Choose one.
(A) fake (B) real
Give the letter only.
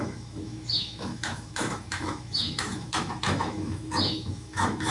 A